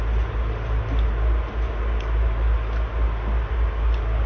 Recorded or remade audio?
recorded